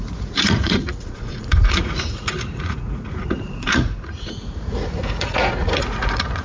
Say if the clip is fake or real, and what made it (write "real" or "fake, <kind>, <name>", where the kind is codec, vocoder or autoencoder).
fake, vocoder, Vocos